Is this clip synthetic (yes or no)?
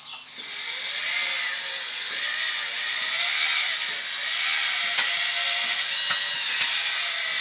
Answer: no